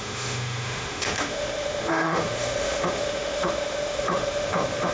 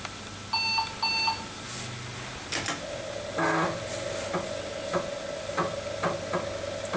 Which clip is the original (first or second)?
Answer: second